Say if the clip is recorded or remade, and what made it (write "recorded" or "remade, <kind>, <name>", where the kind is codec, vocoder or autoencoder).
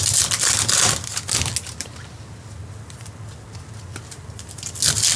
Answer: recorded